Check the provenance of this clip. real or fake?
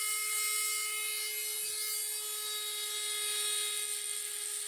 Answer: real